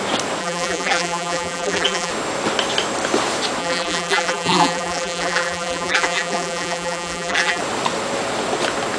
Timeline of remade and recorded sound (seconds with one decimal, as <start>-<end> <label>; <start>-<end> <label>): 0.0-0.4 recorded; 0.4-2.1 remade; 2.1-3.6 recorded; 3.6-7.6 remade; 7.6-9.0 recorded

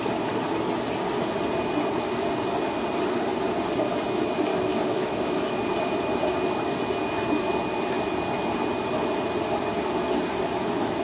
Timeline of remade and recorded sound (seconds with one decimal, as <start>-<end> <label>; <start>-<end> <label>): 0.0-4.5 recorded; 4.5-5.6 remade; 5.6-11.0 recorded